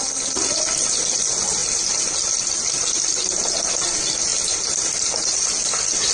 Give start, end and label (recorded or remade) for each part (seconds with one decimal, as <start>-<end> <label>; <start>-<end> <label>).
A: 0.0-6.1 recorded